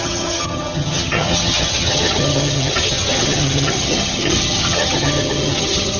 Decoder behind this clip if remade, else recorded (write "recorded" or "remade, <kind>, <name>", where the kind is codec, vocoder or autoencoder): remade, vocoder, HiFi-GAN